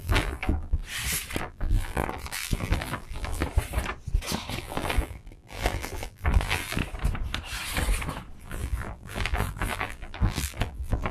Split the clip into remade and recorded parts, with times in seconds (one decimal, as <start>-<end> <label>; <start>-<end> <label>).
0.0-0.8 remade; 0.8-1.4 recorded; 1.4-3.4 remade; 3.4-4.6 recorded; 4.6-6.8 remade; 6.8-8.4 recorded; 8.4-11.1 remade